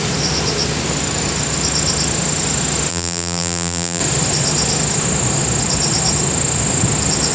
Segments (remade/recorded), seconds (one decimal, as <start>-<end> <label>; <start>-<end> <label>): 0.0-2.9 recorded; 2.9-4.0 remade; 4.0-7.3 recorded